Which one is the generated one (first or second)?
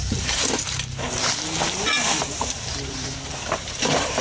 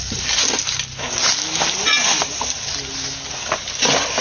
first